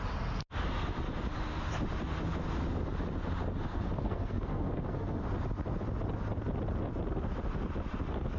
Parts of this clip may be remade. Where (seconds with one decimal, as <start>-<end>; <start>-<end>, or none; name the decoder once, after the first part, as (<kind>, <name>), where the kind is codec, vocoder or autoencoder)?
3.7-5.2 (codec, SNAC)